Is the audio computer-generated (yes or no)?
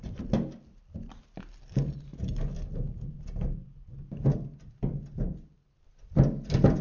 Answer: no